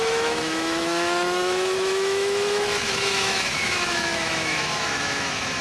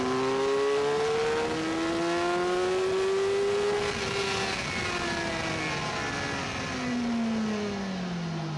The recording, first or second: second